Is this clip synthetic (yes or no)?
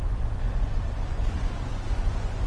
yes